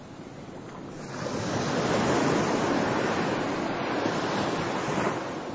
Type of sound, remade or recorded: recorded